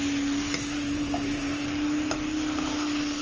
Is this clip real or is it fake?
real